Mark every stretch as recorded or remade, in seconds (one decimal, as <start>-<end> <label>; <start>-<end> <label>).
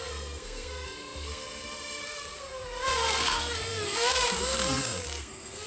0.0-5.7 remade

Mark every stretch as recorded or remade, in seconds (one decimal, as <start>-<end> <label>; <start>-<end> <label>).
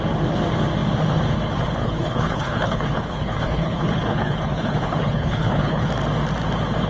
0.0-1.8 recorded; 1.8-5.9 remade; 5.9-6.9 recorded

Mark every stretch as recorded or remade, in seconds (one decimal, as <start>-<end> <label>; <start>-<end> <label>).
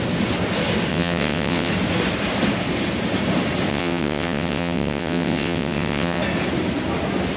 0.0-0.9 recorded; 0.9-1.7 remade; 1.7-3.7 recorded; 3.7-6.2 remade; 6.2-7.4 recorded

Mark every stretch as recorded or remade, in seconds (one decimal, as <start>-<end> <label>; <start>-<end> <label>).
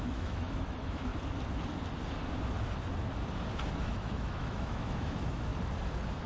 0.0-1.1 remade; 1.1-3.8 recorded; 3.8-5.5 remade; 5.5-6.3 recorded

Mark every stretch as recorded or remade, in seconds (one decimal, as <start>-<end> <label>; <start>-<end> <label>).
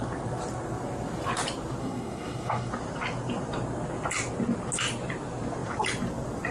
0.0-1.8 recorded; 1.8-2.7 remade; 2.7-6.5 recorded